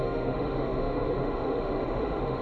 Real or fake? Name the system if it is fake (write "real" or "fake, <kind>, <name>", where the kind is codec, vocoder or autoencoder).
fake, autoencoder, DAC-VAE